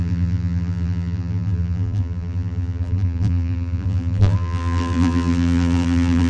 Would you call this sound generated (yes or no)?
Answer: yes